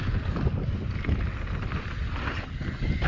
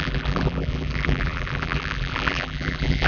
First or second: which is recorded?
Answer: first